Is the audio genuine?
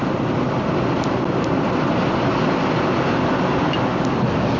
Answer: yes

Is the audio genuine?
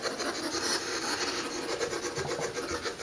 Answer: yes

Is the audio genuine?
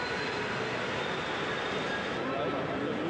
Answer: yes